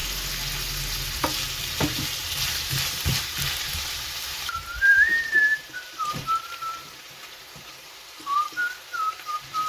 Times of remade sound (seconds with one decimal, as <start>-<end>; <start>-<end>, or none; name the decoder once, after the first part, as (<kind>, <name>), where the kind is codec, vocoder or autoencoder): 1.6-9.7 (vocoder, BigVGAN v2)